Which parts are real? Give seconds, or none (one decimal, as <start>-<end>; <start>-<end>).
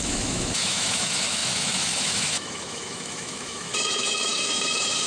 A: none